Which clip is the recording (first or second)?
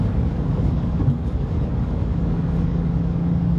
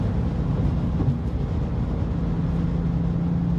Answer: second